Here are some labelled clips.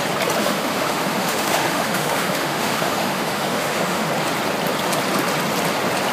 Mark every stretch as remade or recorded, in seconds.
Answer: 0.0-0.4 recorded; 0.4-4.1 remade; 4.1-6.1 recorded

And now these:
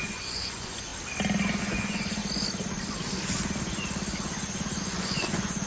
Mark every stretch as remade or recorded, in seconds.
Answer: 0.0-0.9 remade; 0.9-1.6 recorded; 1.6-2.2 remade; 2.2-4.8 recorded; 4.8-5.7 remade

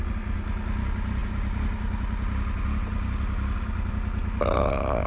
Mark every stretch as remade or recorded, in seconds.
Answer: 0.0-5.1 recorded

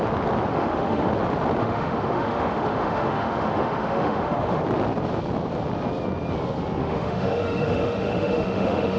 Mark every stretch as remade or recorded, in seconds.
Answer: 0.0-0.5 recorded; 0.5-1.1 remade; 1.1-1.6 recorded; 1.6-4.6 remade; 4.6-6.8 recorded; 6.8-9.0 remade